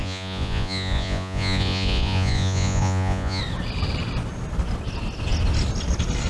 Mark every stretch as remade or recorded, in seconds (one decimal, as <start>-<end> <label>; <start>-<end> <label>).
0.0-3.4 remade; 3.4-6.3 recorded